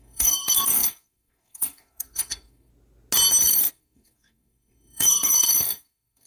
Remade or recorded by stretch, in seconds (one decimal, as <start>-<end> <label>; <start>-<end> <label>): 0.0-2.7 remade; 2.7-3.7 recorded; 3.7-6.3 remade